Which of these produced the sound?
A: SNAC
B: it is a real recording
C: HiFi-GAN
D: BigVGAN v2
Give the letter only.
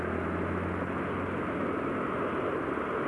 B